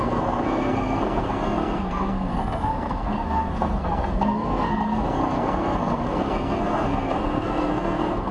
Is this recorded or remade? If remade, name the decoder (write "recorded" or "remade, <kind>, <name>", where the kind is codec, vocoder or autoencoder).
remade, codec, SNAC